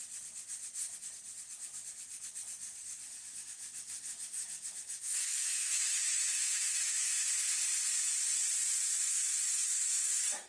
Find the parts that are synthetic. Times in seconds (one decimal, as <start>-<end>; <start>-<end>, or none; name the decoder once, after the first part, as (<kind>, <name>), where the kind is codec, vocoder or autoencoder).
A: 3.0-7.5 (autoencoder, DAC-VAE); 9.0-10.5